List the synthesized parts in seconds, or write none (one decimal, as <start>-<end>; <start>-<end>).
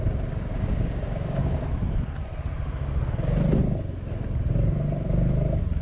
0.5-1.6